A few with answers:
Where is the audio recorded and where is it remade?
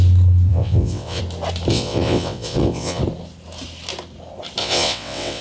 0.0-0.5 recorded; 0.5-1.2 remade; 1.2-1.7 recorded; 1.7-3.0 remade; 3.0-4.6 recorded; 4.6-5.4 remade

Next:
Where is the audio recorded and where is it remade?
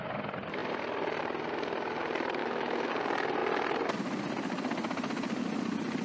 0.0-2.4 recorded; 2.4-2.9 remade; 2.9-6.0 recorded